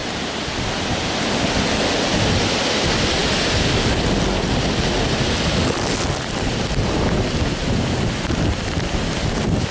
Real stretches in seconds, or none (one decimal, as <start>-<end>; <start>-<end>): 0.0-9.7